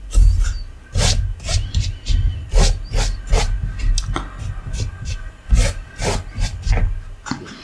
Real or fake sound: real